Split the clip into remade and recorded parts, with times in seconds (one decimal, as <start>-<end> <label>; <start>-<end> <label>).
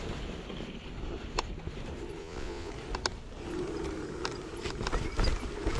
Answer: 0.0-2.2 recorded; 2.2-2.7 remade; 2.7-5.8 recorded